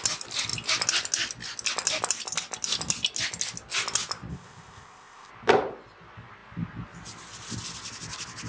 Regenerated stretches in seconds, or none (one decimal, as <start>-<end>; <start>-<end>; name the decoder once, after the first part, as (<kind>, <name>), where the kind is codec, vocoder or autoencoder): 4.3-5.3 (codec, ZipCodec)